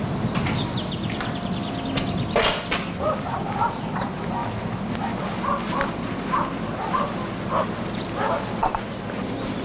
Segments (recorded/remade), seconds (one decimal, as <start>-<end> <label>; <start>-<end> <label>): 0.0-9.6 recorded